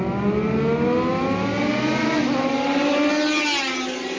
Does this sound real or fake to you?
real